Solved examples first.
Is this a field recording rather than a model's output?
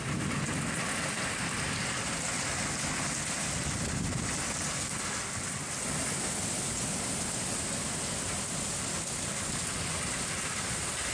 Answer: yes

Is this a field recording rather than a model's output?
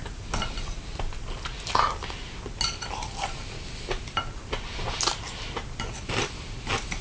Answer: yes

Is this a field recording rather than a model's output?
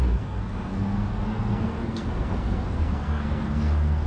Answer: no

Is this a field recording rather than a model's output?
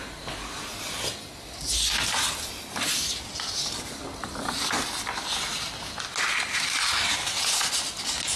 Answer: yes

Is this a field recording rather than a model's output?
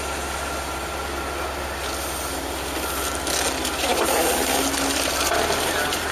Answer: yes